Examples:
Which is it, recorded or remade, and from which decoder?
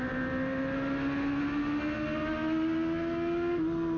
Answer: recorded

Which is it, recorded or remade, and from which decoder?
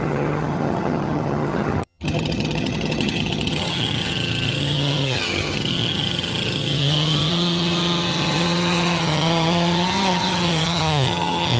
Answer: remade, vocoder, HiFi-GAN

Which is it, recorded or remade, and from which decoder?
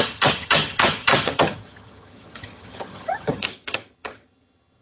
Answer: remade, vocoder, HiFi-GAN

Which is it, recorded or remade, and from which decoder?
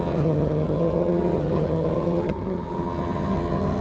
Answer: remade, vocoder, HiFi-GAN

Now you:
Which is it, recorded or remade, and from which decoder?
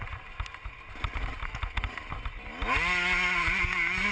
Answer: recorded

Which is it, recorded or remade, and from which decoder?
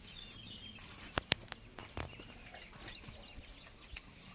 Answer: recorded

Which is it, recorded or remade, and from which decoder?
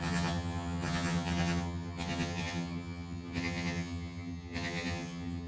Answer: remade, vocoder, HiFi-GAN